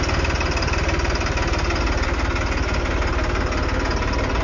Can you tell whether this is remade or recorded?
recorded